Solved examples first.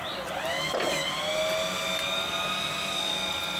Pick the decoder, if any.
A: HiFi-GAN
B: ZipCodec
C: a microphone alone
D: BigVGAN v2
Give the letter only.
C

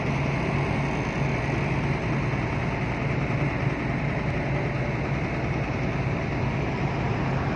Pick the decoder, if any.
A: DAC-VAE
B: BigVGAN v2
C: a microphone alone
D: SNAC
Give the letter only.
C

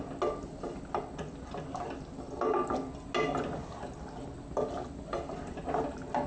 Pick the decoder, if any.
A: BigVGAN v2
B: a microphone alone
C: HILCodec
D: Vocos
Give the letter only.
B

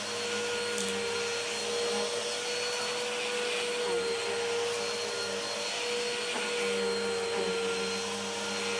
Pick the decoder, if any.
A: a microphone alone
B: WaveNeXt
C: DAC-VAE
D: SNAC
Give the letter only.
A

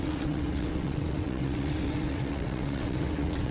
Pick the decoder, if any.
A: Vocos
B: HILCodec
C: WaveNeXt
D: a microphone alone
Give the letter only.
C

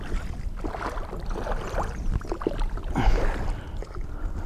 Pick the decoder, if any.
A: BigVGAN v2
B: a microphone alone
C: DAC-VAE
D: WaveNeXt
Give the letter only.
B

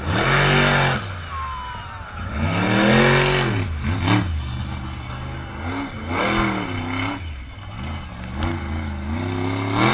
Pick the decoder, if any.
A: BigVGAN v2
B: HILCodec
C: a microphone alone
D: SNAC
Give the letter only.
C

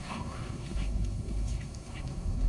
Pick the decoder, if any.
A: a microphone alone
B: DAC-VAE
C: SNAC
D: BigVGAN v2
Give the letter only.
C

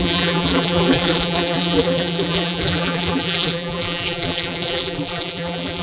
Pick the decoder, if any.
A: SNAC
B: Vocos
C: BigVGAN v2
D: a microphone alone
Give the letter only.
C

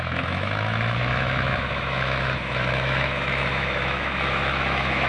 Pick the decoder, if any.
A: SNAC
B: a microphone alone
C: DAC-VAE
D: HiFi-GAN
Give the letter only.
C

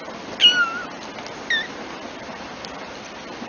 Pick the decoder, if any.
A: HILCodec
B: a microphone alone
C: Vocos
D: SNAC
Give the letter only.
B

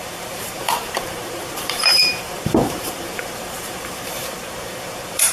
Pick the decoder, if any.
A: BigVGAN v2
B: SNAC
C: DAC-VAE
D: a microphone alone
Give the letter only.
A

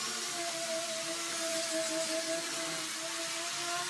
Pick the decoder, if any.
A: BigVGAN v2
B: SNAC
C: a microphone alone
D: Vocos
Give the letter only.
C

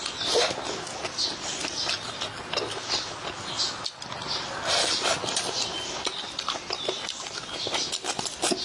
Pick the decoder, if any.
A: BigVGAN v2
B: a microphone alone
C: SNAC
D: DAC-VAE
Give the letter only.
B